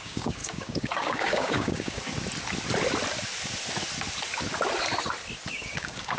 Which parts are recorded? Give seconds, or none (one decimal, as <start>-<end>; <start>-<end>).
2.0-5.5